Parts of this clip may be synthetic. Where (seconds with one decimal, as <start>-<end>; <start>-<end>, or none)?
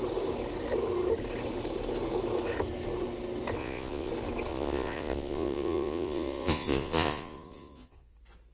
3.6-4.1; 4.5-8.1